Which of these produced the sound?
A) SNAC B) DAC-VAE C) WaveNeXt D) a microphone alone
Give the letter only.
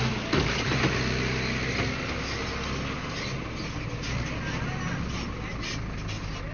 D